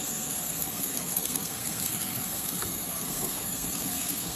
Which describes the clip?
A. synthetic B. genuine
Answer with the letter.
A